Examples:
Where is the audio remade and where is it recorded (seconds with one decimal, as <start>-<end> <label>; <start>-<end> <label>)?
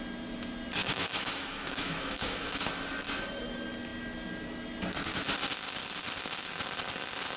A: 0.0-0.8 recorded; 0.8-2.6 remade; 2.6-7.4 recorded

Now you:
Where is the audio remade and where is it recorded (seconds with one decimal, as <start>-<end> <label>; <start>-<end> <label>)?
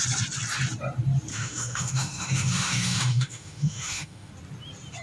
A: 0.0-1.3 recorded; 1.3-4.3 remade; 4.3-5.0 recorded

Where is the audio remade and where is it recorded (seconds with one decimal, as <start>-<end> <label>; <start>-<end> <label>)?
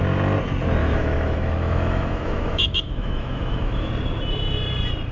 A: 0.0-0.8 recorded; 0.8-3.9 remade; 3.9-5.1 recorded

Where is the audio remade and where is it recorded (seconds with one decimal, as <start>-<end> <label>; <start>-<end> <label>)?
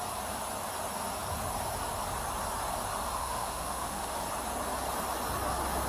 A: 0.0-3.2 recorded; 3.2-4.2 remade; 4.2-5.9 recorded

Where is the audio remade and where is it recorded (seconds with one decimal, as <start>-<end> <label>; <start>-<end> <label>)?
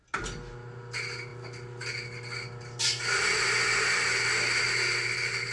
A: 0.0-5.5 recorded